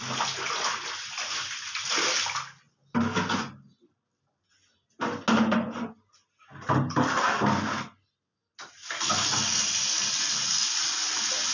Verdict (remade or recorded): recorded